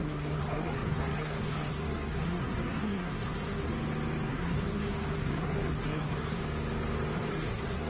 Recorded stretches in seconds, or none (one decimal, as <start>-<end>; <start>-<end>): 3.7-4.3; 6.4-7.3